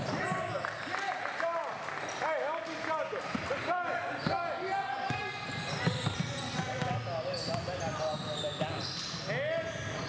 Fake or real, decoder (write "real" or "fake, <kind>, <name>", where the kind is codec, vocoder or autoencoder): real